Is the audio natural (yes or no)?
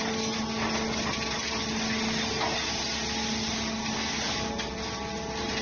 yes